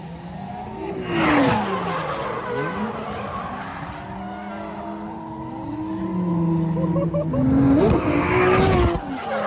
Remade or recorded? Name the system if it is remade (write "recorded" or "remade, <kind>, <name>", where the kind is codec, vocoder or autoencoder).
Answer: recorded